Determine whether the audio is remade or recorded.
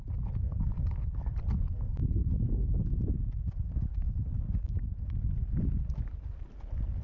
recorded